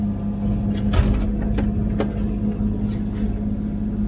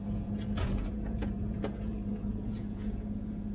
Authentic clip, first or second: first